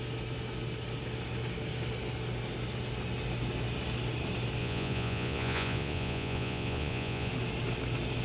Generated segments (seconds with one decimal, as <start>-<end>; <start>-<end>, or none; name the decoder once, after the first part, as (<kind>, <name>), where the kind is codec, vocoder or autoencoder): 4.6-7.3 (vocoder, Vocos)